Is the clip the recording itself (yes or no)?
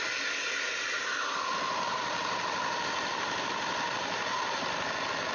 yes